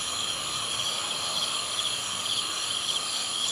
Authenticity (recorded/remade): remade